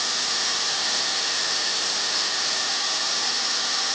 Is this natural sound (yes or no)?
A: yes